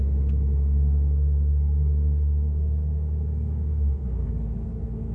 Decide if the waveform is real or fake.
fake